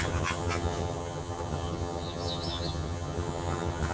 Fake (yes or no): yes